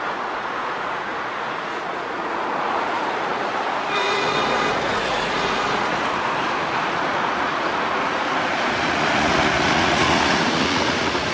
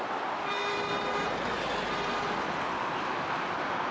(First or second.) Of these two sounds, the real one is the second